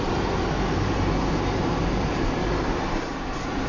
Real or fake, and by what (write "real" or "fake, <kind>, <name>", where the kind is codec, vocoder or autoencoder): real